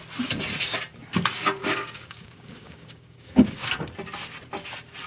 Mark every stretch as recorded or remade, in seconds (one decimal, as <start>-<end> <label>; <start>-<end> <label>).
0.0-1.6 recorded; 1.6-3.7 remade; 3.7-5.1 recorded